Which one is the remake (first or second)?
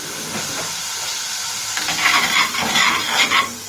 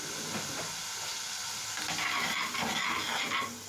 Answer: first